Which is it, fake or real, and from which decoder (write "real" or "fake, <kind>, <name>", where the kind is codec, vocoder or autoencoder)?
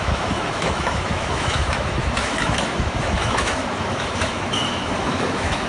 fake, autoencoder, DAC-VAE